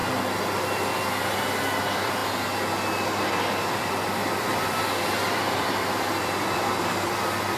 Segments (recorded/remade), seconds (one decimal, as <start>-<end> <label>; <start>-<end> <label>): 0.0-1.8 recorded; 1.8-2.2 remade; 2.2-3.6 recorded; 3.6-7.6 remade